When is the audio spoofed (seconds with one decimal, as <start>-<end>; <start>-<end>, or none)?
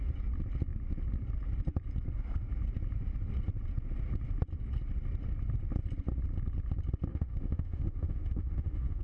7.1-9.0